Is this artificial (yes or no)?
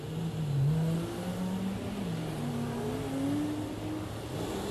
yes